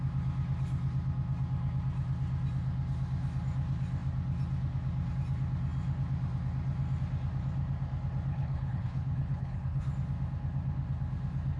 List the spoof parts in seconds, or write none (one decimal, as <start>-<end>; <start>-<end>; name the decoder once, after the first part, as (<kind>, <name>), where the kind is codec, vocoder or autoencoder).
8.3-9.9 (codec, HILCodec)